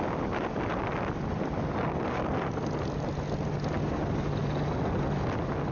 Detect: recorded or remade recorded